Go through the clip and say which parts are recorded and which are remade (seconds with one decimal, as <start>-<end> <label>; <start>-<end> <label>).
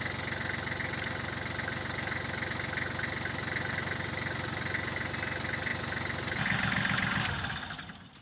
0.0-8.2 recorded